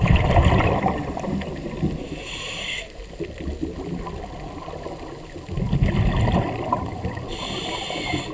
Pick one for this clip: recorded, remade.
recorded